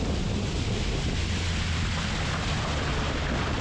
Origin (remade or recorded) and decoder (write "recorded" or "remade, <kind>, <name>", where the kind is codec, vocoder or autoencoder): recorded